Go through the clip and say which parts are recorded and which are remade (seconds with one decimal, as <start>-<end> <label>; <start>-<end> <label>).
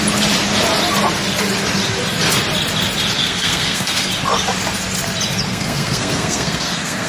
0.0-3.2 recorded; 3.2-4.1 remade; 4.1-5.5 recorded; 5.5-7.1 remade